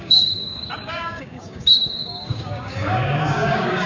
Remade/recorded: remade